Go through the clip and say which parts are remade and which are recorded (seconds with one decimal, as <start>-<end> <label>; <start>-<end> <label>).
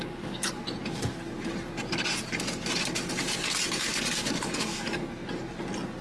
0.0-0.6 remade; 0.6-3.9 recorded; 3.9-5.0 remade; 5.0-6.0 recorded